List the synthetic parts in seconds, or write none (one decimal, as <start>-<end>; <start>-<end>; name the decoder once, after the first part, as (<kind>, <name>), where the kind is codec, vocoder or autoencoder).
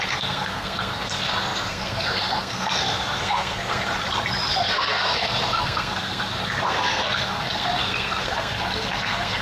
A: 0.0-3.9 (codec, SNAC); 4.5-9.4